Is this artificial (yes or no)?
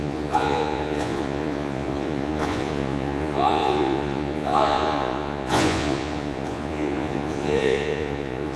yes